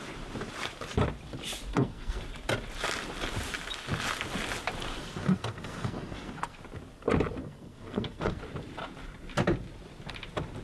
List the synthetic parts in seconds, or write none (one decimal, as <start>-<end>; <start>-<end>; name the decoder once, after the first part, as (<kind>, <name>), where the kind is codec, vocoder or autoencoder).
1.7-2.2 (codec, SNAC); 5.0-6.6; 7.4-8.4